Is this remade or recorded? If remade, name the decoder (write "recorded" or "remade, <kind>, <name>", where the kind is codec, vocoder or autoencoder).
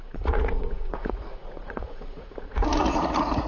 remade, vocoder, Vocos